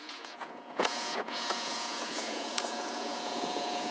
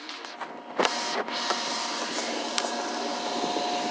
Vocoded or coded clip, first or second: first